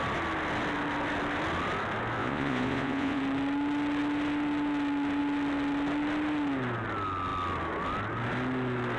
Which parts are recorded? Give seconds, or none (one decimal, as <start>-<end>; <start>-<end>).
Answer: 0.0-2.2; 3.2-9.0